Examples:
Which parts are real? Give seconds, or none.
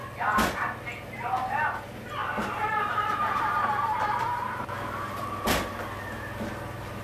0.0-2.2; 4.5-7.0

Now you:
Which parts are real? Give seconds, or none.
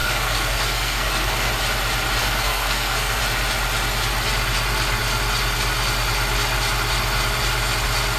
1.5-2.2; 3.2-8.2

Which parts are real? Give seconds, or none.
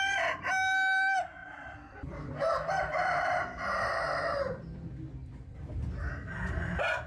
0.0-1.4; 5.7-7.1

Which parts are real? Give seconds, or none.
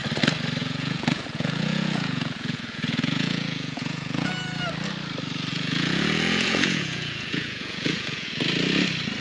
0.0-0.6; 4.3-5.5; 8.4-9.2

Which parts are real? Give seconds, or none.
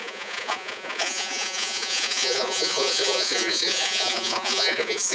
none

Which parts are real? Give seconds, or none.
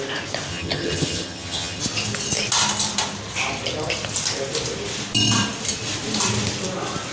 0.0-0.5; 1.8-7.1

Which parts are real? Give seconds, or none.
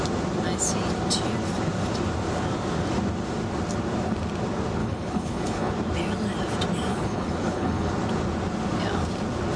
0.0-4.8; 5.7-6.9; 7.9-9.6